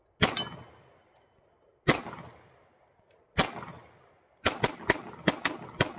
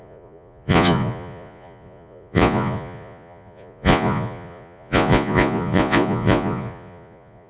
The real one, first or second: first